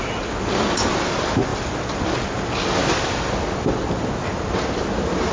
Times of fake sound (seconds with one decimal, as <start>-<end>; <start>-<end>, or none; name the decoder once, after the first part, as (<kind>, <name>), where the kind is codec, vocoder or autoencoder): none